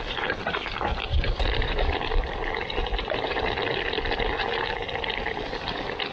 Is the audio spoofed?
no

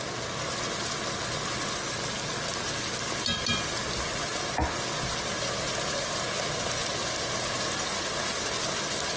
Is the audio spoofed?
no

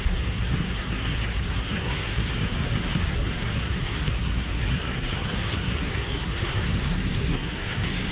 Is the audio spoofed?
yes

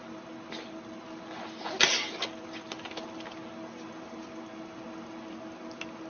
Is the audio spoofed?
no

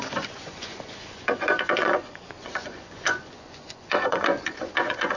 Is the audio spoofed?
yes